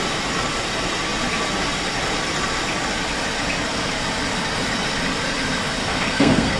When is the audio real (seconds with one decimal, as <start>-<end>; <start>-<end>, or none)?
0.0-5.8